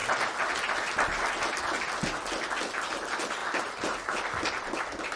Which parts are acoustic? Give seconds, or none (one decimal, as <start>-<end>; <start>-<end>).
0.0-5.2